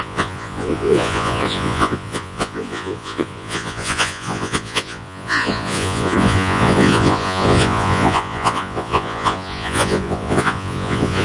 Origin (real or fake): fake